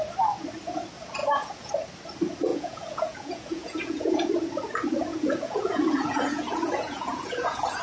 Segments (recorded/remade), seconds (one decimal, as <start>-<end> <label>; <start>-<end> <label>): 0.0-1.2 recorded; 1.2-1.7 remade; 1.7-2.5 recorded; 2.5-4.3 remade; 4.3-5.1 recorded; 5.1-7.8 remade